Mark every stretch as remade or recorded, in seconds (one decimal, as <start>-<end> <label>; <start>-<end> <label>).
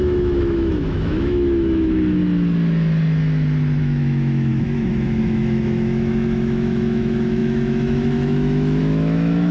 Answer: 0.0-2.2 remade; 2.2-3.8 recorded; 3.8-9.5 remade